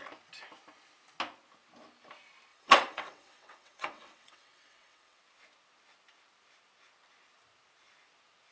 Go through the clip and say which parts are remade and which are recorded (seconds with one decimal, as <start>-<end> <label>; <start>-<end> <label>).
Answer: 0.0-2.5 recorded; 2.5-5.2 remade; 5.2-8.5 recorded